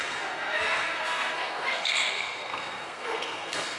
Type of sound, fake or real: fake